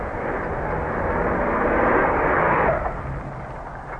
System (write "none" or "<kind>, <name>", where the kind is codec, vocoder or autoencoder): none